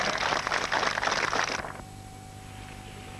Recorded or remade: recorded